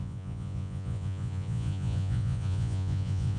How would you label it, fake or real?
fake